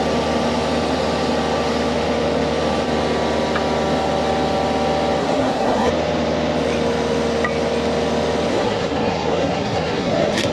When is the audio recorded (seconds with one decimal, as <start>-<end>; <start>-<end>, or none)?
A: 0.0-5.2; 5.9-8.5